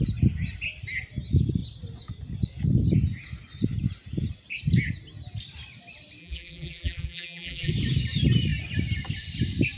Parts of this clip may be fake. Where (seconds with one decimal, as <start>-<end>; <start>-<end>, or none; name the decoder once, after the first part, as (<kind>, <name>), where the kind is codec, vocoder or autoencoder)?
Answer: 6.2-7.7 (vocoder, BigVGAN v2)